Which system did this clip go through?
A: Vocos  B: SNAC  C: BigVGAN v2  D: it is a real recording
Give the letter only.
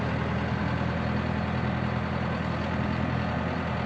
D